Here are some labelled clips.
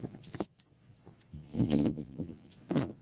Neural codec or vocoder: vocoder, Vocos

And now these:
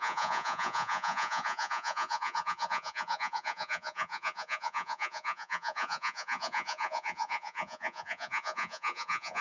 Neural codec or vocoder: vocoder, Vocos